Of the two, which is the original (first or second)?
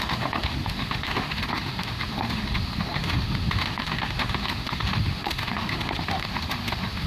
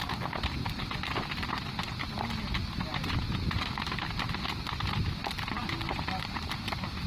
second